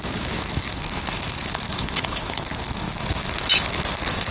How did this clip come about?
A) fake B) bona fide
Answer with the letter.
A